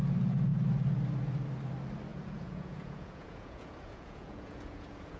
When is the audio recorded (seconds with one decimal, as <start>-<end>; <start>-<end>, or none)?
0.0-2.1